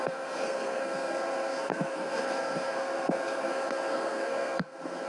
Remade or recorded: remade